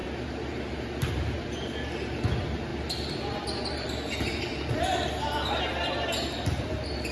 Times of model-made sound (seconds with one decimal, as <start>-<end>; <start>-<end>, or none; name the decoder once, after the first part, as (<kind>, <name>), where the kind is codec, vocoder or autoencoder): none